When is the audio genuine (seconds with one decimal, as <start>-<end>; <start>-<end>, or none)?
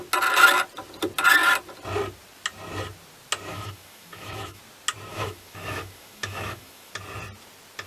0.0-3.5; 4.6-5.1; 6.9-7.9